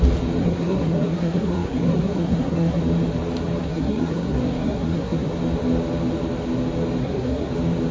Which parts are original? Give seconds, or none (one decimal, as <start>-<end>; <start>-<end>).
0.0-0.4; 2.8-3.6; 5.3-7.0; 7.5-7.9